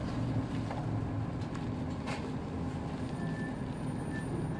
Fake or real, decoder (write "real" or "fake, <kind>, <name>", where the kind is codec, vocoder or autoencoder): real